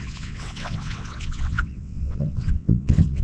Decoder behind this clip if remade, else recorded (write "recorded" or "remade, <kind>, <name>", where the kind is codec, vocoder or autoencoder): remade, vocoder, WaveNeXt